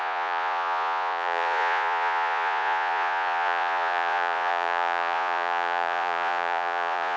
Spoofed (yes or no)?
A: yes